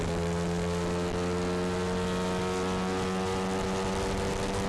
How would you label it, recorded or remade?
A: recorded